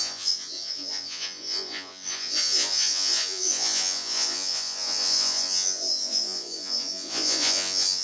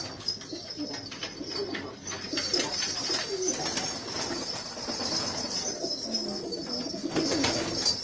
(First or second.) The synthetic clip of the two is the first